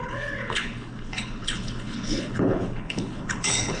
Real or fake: fake